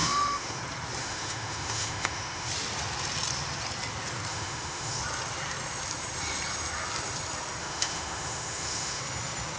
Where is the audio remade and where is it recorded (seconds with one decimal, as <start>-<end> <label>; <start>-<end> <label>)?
0.0-0.6 remade; 0.6-1.0 recorded; 1.0-2.5 remade; 2.5-4.3 recorded; 4.3-5.0 remade; 5.0-7.6 recorded; 7.6-9.0 remade; 9.0-9.6 recorded